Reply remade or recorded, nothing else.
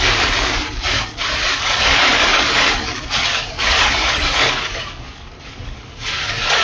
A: remade